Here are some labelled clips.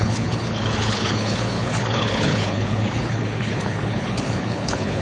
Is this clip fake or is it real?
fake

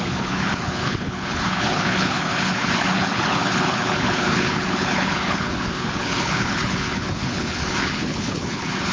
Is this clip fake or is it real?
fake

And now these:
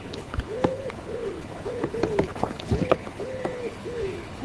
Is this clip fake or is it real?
fake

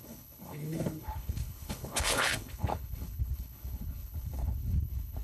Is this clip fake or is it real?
fake